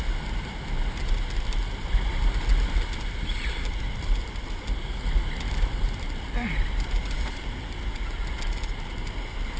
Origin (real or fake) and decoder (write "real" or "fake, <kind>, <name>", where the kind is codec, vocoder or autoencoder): real